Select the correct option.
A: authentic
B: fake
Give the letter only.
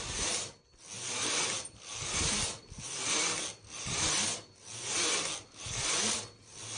A